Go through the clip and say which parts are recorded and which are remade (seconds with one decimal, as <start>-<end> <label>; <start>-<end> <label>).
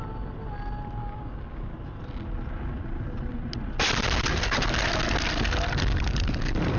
0.0-1.0 recorded; 1.0-1.7 remade; 1.7-6.8 recorded